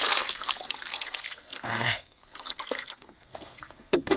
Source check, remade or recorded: remade